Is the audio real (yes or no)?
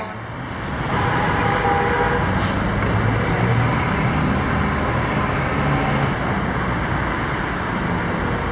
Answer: yes